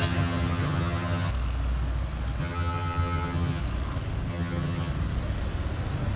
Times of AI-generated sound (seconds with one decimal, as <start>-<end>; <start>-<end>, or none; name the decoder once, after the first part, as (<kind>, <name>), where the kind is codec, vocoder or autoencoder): 0.0-1.3 (vocoder, HiFi-GAN); 2.4-3.6; 4.3-4.9